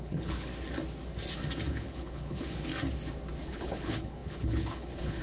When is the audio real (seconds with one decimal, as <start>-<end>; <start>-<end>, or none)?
0.5-1.7; 2.7-3.4